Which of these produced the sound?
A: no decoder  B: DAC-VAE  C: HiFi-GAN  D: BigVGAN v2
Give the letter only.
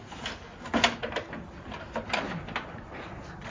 A